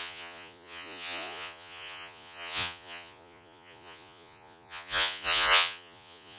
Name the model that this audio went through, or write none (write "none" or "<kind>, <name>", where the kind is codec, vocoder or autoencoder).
vocoder, Vocos